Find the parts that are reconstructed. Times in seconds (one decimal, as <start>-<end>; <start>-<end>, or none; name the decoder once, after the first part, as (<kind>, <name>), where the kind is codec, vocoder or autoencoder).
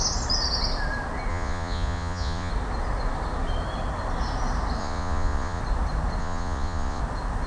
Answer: 1.3-2.5 (vocoder, Vocos); 4.8-5.6; 6.2-7.0